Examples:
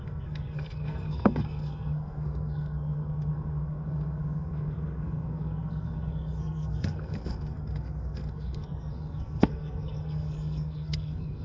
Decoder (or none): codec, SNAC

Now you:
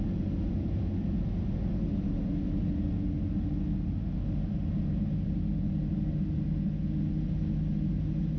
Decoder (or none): none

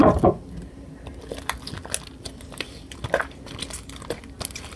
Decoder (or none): none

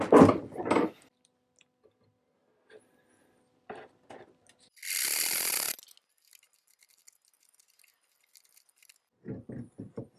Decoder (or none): none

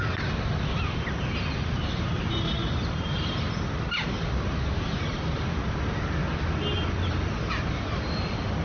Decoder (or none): none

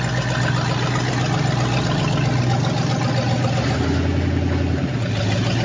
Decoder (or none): none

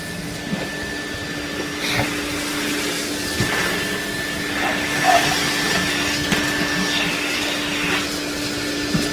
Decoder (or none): none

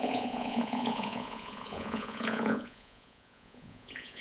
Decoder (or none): vocoder, Vocos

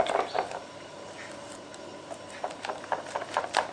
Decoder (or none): none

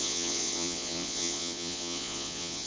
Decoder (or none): vocoder, Vocos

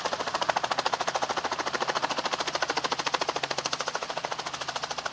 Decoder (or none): none